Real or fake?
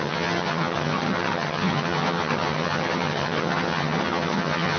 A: fake